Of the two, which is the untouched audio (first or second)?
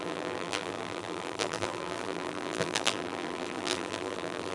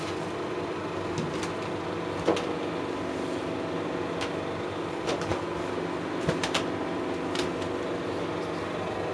second